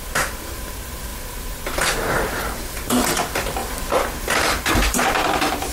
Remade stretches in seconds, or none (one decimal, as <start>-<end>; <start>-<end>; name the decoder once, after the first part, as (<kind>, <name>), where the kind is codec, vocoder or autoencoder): 0.0-5.7 (vocoder, BigVGAN v2)